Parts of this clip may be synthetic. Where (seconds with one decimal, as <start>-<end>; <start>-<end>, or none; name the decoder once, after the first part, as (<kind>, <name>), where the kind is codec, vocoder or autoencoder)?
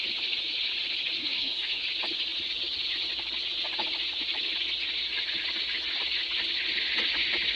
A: 1.2-1.8 (codec, SNAC)